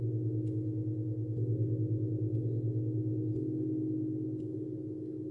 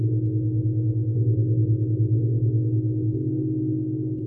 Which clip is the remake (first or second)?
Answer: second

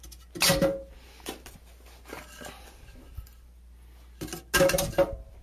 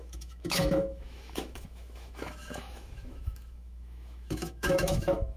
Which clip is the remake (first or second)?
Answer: second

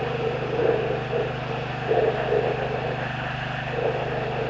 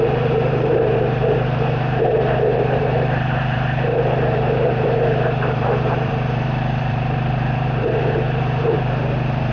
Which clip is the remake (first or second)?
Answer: second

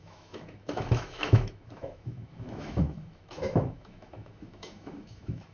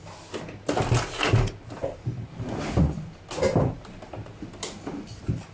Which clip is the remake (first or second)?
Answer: first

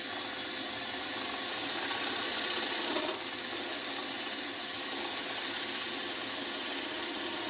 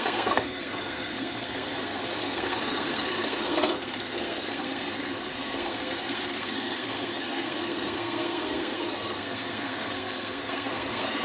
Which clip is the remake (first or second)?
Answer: second